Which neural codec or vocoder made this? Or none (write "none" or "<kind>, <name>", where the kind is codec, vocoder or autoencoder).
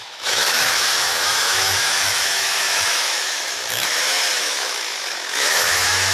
autoencoder, DAC-VAE